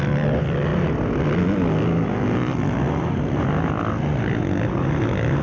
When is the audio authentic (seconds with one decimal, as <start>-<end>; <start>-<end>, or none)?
0.0-5.4